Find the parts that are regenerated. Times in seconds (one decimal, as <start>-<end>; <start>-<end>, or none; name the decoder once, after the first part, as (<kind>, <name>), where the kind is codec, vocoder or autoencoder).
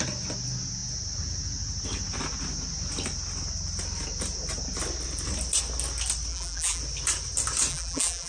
6.3-6.8 (vocoder, BigVGAN v2); 7.7-8.3